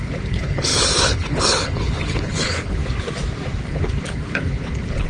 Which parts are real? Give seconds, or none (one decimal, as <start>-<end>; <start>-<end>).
2.8-3.6